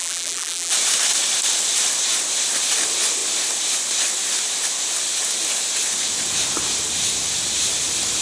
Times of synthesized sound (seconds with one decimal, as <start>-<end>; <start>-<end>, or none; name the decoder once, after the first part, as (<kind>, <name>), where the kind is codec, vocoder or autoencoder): 0.0-0.7 (vocoder, BigVGAN v2)